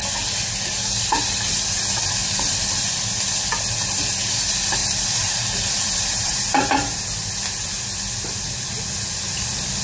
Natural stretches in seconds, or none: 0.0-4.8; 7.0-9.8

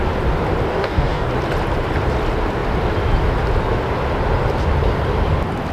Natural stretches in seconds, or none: 0.0-0.7; 1.3-5.7

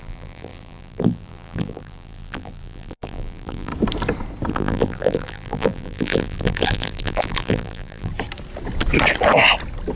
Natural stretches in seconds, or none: 3.7-4.5; 8.1-10.0

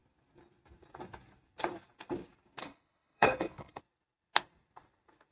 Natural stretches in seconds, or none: 0.0-2.6; 3.8-5.3

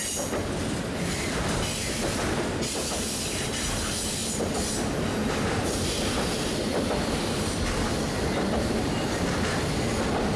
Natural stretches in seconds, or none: 0.8-4.2; 4.7-6.7; 9.2-10.4

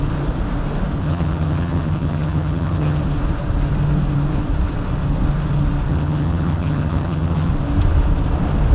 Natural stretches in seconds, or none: 0.0-1.0; 3.0-5.9; 7.5-8.7

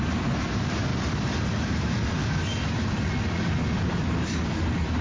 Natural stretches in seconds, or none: 0.0-5.0

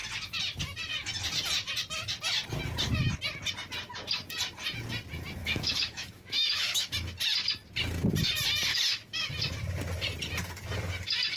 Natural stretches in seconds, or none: 0.0-5.4; 6.9-8.7; 9.3-11.4